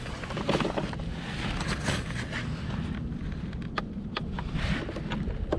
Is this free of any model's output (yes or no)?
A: yes